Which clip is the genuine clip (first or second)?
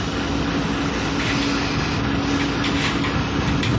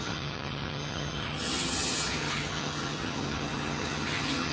first